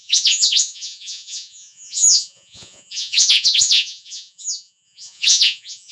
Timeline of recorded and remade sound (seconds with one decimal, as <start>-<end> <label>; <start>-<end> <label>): 0.0-5.9 remade